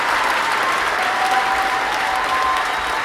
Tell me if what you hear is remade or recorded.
recorded